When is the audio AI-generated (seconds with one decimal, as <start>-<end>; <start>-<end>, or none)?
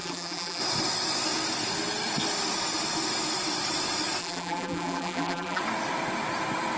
0.0-0.6; 4.2-5.6